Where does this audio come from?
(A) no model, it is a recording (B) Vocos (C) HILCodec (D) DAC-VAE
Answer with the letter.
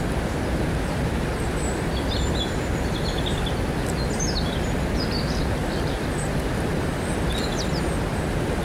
A